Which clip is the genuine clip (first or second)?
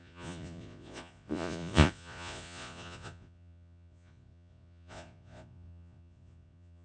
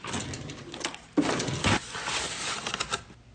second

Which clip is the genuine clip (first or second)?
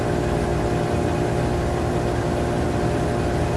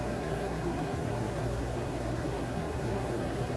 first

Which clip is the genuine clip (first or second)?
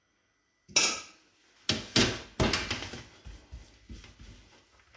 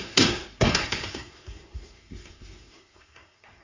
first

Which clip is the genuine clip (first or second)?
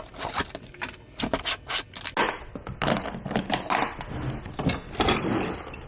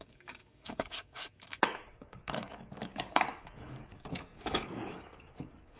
first